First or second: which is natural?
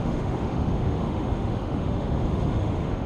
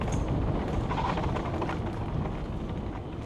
second